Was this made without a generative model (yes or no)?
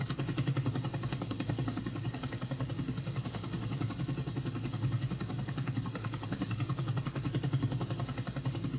no